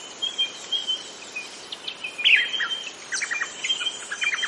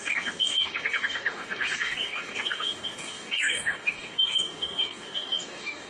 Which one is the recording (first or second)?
first